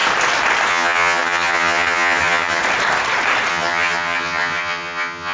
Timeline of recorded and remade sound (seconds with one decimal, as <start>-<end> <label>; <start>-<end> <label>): 0.0-0.7 recorded; 0.7-2.6 remade; 2.6-3.5 recorded; 3.5-5.3 remade